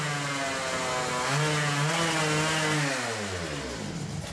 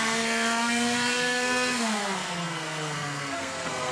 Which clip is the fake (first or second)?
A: second